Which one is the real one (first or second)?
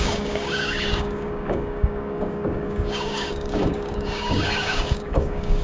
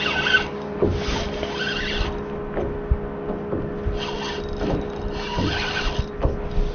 second